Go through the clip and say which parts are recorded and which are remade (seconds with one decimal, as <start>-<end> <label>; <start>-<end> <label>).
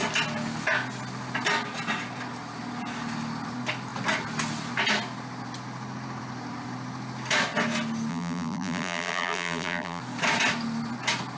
0.0-8.1 recorded; 8.1-10.0 remade; 10.0-11.4 recorded